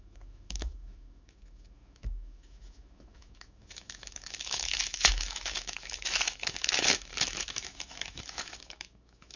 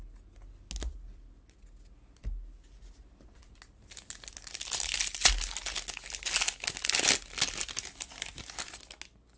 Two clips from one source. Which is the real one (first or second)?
second